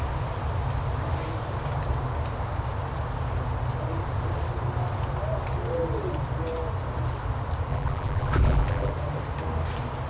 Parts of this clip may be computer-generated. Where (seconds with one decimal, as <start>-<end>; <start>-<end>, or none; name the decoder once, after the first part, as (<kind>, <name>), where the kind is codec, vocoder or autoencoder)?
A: 7.7-8.9 (vocoder, BigVGAN v2)